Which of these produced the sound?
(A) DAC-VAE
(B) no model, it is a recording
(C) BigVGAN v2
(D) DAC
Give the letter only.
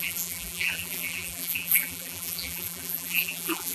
C